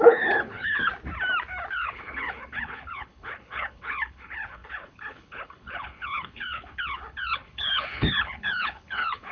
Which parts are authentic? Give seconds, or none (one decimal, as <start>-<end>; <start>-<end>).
0.9-1.7